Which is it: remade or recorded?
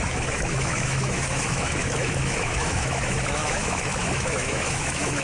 remade